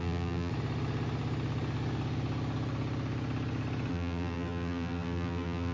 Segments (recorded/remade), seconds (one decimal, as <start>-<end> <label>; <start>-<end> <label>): 0.0-0.5 remade; 0.5-3.9 recorded; 3.9-5.7 remade